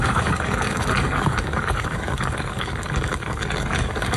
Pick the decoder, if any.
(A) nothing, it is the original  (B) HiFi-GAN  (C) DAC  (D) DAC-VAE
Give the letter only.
C